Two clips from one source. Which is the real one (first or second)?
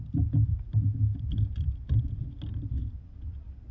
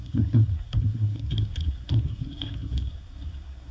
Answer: first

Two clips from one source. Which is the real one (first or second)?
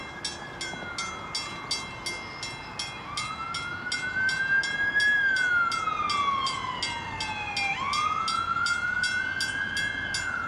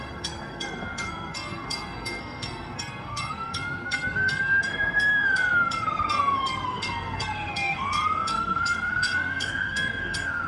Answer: first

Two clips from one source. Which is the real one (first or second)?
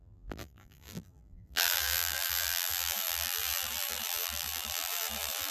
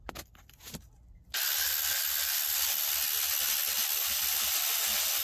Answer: second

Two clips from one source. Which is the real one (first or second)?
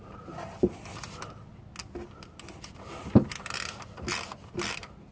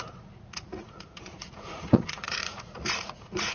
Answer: first